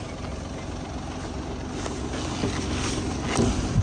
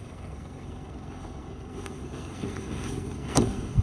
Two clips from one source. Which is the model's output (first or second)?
second